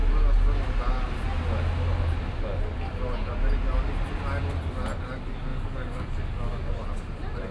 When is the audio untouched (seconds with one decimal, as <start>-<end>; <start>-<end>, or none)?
0.0-5.5; 6.7-7.5